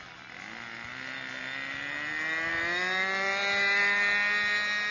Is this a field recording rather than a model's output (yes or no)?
yes